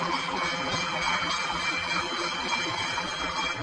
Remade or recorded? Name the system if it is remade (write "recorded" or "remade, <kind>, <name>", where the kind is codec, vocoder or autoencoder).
remade, vocoder, BigVGAN v2